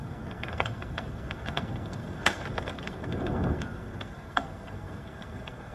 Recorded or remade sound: remade